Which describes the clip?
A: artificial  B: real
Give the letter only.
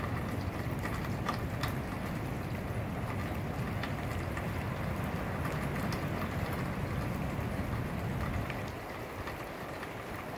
B